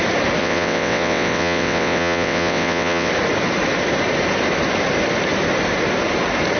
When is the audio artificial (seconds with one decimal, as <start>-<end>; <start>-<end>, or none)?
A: 0.4-3.1